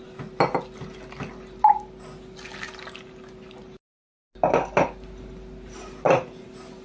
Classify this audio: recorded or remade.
recorded